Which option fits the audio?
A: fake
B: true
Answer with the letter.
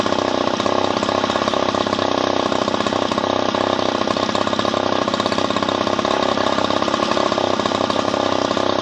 B